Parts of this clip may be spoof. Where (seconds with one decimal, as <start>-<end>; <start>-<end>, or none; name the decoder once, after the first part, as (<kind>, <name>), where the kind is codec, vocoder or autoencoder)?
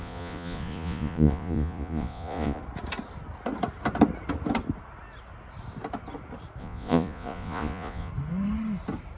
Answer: 0.0-2.6 (vocoder, Vocos); 6.6-8.1